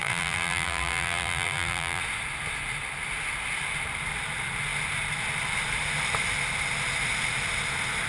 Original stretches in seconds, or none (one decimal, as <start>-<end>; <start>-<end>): 2.0-8.1